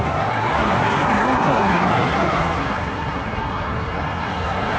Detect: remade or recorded remade